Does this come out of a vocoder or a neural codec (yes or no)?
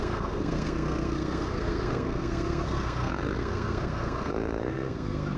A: yes